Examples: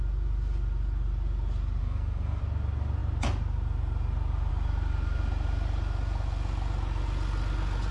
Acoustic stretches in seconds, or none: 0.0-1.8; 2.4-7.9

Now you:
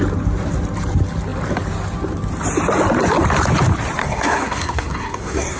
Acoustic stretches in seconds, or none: 0.0-4.0